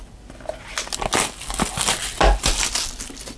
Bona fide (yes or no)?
yes